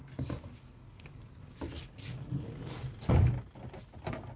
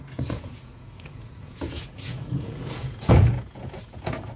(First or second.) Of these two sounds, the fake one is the second